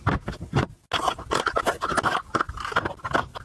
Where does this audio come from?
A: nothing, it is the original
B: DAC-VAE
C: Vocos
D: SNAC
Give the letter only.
A